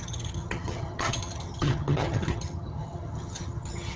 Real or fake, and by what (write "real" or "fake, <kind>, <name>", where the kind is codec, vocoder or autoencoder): fake, vocoder, HiFi-GAN